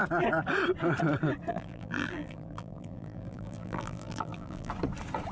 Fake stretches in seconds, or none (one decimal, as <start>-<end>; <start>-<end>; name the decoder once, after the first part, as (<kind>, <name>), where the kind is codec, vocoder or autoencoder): 1.5-4.7 (vocoder, BigVGAN v2)